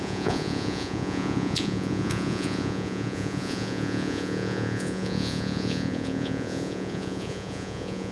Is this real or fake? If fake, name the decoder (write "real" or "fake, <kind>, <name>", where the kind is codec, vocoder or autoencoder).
fake, vocoder, Vocos